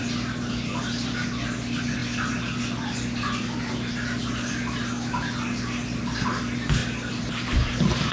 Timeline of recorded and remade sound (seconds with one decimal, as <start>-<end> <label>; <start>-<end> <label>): 0.0-8.1 recorded